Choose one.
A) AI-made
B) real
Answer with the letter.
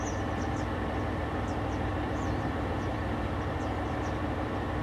A